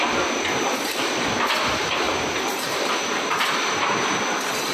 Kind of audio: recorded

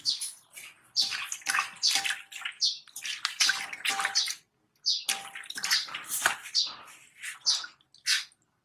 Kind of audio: recorded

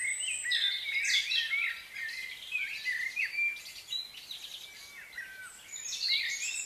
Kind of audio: recorded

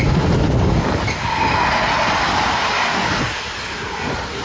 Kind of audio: recorded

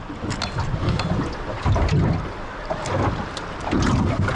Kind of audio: recorded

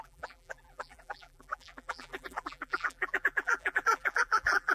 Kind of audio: remade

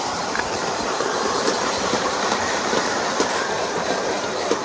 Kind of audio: remade